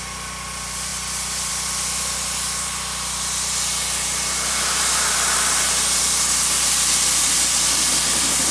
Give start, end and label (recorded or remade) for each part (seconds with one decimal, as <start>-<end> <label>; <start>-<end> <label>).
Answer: 0.0-8.5 recorded